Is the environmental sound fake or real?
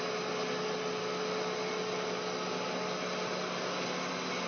real